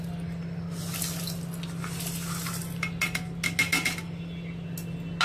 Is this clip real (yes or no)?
yes